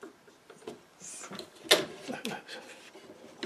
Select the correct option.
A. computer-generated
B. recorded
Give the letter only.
B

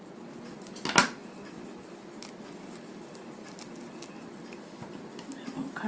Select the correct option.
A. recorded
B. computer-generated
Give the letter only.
A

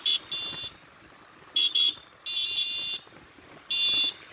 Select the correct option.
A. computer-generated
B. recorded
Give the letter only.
B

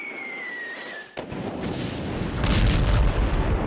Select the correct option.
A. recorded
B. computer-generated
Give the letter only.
B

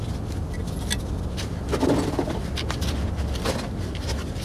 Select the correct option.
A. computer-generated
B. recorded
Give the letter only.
B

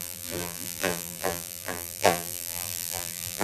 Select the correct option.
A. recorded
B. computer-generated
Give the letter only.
B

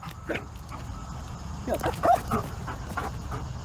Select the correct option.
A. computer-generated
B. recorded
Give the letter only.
B